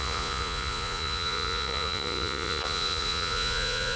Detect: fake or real fake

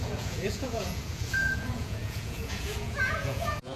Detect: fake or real fake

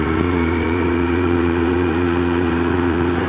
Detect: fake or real fake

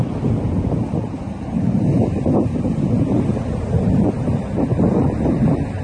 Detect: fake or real real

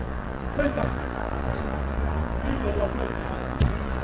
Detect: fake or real fake